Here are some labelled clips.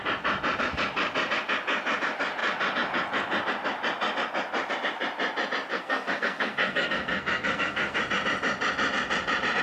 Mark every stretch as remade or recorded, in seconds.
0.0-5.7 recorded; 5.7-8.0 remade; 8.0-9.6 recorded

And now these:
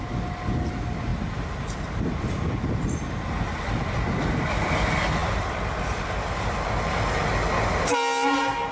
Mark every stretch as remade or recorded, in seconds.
0.0-8.7 recorded

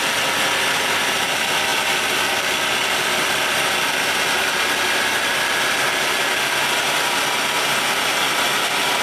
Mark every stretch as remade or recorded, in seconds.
0.0-9.0 recorded

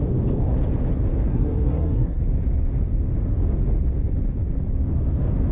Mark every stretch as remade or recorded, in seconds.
0.0-1.3 recorded; 1.3-2.2 remade; 2.2-5.5 recorded

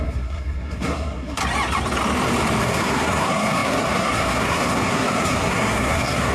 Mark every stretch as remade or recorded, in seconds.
0.0-1.4 remade; 1.4-2.6 recorded; 2.6-6.3 remade

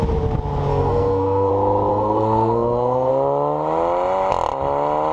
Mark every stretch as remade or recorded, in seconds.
0.0-0.7 recorded; 0.7-1.5 remade; 1.5-1.9 recorded; 1.9-3.1 remade; 3.1-5.1 recorded

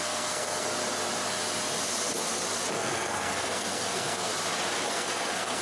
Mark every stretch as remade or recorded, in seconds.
0.0-0.7 remade; 0.7-2.7 recorded; 2.7-4.3 remade; 4.3-4.9 recorded; 4.9-5.6 remade

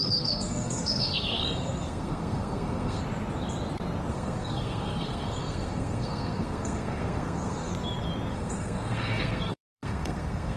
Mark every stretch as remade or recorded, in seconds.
0.0-3.0 remade; 3.0-4.1 recorded; 4.1-7.7 remade; 7.7-8.3 recorded; 8.3-10.6 remade